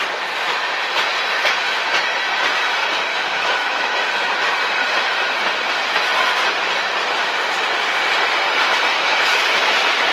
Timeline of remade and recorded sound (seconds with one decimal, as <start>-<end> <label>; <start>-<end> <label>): 0.0-3.1 recorded; 3.1-4.2 remade; 4.2-8.9 recorded; 8.9-9.6 remade; 9.6-10.1 recorded